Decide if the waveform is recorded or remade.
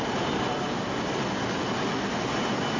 recorded